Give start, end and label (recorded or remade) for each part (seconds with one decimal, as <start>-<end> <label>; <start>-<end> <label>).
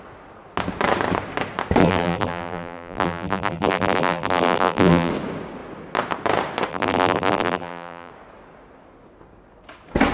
0.0-1.8 recorded; 1.8-5.1 remade; 5.1-6.7 recorded; 6.7-8.1 remade; 8.1-10.1 recorded